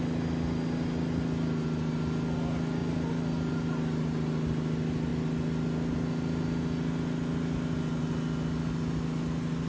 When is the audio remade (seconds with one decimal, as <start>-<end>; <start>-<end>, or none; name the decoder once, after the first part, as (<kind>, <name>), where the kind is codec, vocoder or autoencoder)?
none